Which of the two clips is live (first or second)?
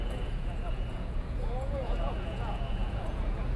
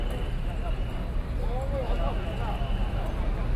second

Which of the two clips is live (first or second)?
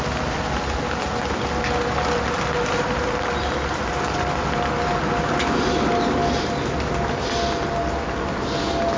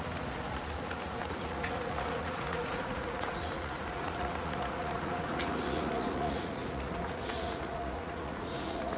first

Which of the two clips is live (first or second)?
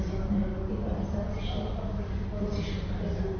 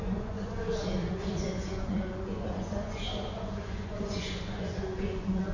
first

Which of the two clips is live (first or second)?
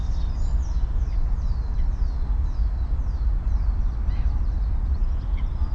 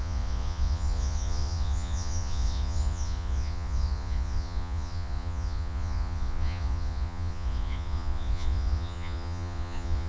first